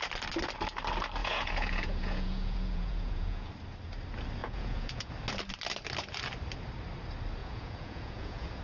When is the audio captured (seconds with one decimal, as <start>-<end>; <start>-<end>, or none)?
0.0-1.2; 3.5-4.4; 5.1-7.4